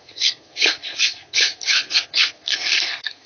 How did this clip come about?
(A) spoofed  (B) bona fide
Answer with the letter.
A